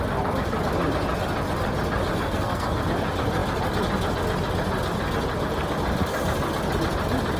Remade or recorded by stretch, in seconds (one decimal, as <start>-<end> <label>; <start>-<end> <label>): 0.0-2.1 recorded; 2.1-2.8 remade; 2.8-7.4 recorded